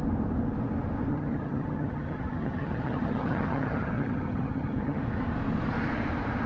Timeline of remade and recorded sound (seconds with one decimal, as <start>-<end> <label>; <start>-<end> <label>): 0.0-1.1 recorded; 1.1-5.0 remade; 5.0-6.5 recorded